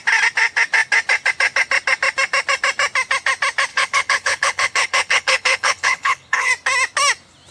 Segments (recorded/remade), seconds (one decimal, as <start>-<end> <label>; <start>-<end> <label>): 0.0-3.7 recorded; 3.7-6.5 remade; 6.5-7.5 recorded